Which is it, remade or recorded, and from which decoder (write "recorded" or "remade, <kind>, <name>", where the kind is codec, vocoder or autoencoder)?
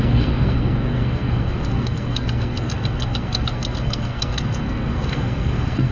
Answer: remade, codec, SNAC